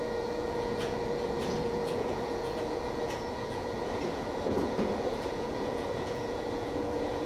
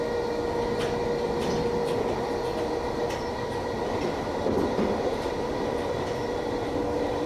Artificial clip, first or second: first